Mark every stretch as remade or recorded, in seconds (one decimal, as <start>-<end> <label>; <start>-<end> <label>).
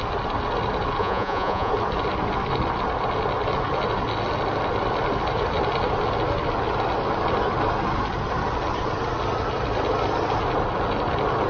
0.0-1.0 recorded; 1.0-1.7 remade; 1.7-11.5 recorded